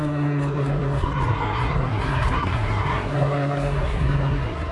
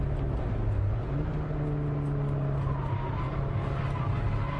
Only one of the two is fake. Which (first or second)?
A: first